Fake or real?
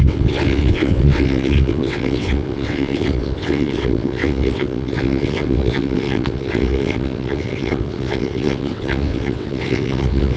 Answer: fake